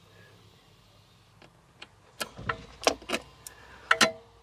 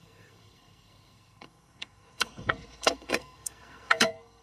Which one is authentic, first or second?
first